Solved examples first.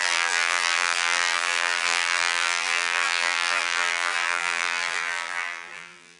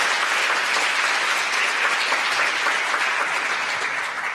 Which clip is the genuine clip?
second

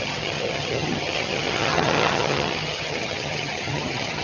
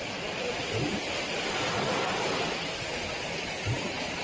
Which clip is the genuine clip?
second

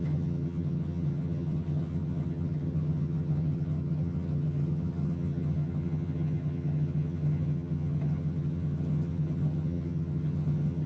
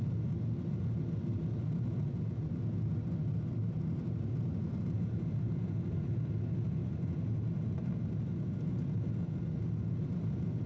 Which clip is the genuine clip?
second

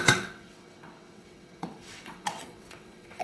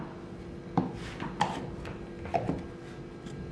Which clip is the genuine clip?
second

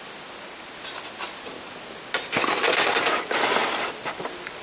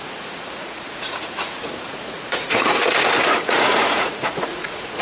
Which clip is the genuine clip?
first